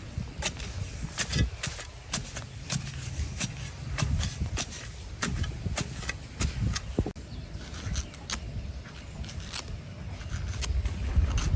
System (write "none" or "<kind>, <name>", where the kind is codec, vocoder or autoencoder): none